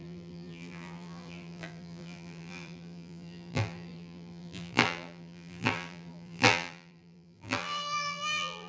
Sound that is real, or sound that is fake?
fake